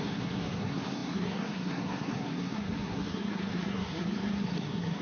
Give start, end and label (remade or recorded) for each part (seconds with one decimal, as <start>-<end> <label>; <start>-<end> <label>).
0.0-5.0 remade